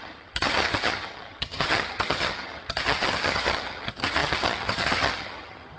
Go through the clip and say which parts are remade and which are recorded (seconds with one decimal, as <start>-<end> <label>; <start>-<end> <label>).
0.0-5.8 remade